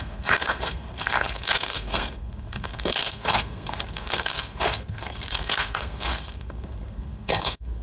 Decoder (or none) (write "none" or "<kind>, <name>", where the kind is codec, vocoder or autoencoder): codec, SNAC